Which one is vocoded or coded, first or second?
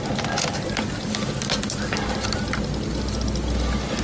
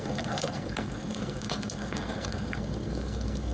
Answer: second